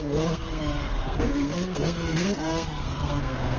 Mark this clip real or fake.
fake